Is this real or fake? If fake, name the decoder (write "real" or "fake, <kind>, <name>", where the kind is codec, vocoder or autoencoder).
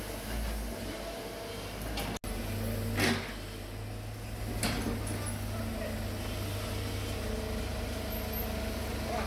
real